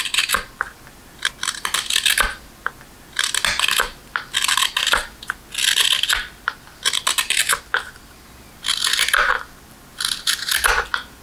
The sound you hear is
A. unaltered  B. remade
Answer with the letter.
A